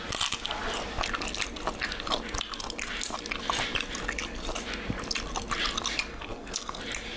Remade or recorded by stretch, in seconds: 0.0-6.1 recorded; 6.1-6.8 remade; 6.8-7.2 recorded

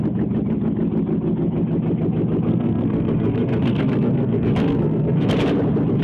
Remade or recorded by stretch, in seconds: 0.0-2.5 recorded; 2.5-5.3 remade; 5.3-6.0 recorded

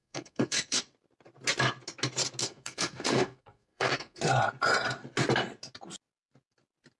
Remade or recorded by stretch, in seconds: 0.0-0.8 remade; 0.8-2.4 recorded; 2.4-4.2 remade; 4.2-7.0 recorded

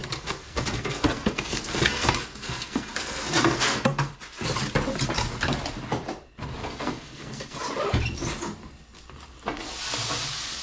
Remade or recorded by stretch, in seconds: 0.0-4.1 remade; 4.1-6.6 recorded; 6.6-7.6 remade; 7.6-10.6 recorded

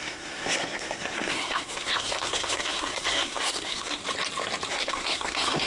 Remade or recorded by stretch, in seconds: 0.0-4.0 remade; 4.0-4.7 recorded; 4.7-5.7 remade

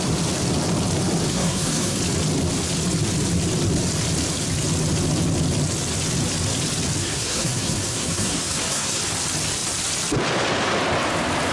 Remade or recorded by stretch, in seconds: 0.0-1.3 recorded; 1.3-2.0 remade; 2.0-7.0 recorded; 7.0-9.0 remade; 9.0-11.5 recorded

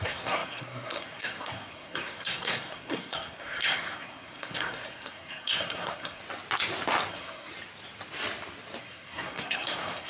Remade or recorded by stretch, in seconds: 0.0-6.2 remade; 6.2-7.1 recorded; 7.1-7.5 remade; 7.5-8.8 recorded; 8.8-10.1 remade

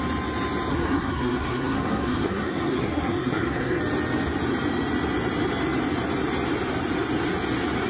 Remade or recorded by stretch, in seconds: 0.0-0.7 recorded; 0.7-3.8 remade; 3.8-7.9 recorded